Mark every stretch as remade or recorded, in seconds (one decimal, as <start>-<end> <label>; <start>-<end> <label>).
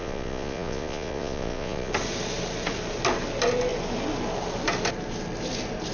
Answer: 0.0-1.9 remade; 1.9-5.9 recorded